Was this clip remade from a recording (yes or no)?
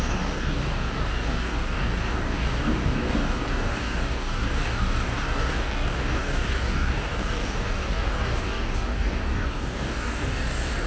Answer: yes